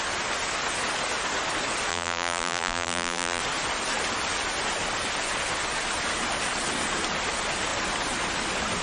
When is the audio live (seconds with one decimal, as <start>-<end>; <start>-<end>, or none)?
0.0-1.9; 3.4-8.8